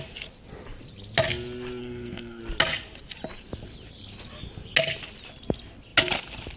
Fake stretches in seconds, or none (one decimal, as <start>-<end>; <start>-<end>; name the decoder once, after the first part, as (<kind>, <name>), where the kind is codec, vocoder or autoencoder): 1.8-2.4 (codec, SNAC)